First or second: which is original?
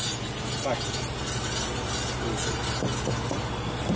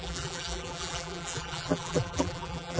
first